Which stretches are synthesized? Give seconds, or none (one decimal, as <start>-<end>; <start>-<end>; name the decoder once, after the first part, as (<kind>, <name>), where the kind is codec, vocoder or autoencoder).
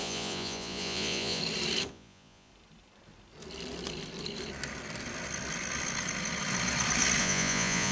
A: 0.0-1.4 (vocoder, Vocos); 1.9-2.5; 7.2-7.9